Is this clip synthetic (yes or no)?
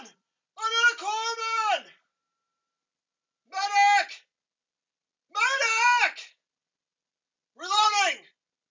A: no